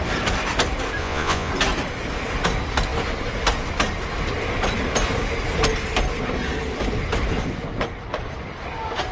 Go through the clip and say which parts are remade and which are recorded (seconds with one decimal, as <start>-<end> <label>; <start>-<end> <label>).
0.0-1.0 recorded; 1.0-1.5 remade; 1.5-9.1 recorded